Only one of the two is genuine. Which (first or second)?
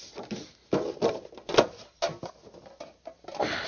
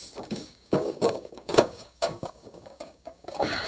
first